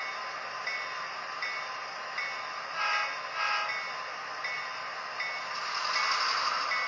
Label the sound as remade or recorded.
recorded